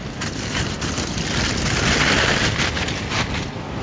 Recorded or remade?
recorded